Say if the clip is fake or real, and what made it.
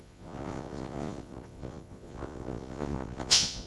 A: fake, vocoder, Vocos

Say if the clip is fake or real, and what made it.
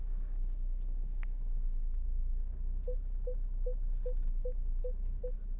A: real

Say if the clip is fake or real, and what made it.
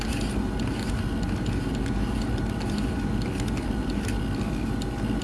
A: real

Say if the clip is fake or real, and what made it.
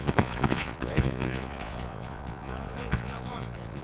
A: fake, vocoder, Vocos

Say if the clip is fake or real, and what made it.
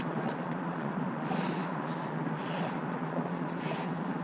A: fake, vocoder, Vocos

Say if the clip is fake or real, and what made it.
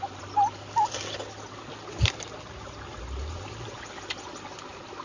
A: real